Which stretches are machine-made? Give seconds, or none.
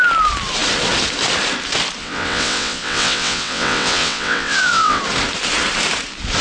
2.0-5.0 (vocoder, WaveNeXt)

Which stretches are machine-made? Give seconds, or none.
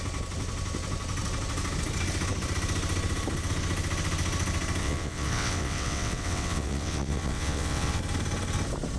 4.8-8.0 (vocoder, WaveNeXt)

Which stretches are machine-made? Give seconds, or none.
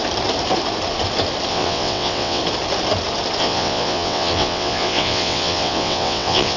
1.5-2.4 (vocoder, WaveNeXt); 3.4-6.6